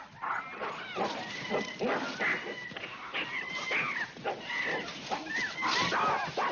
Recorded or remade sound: recorded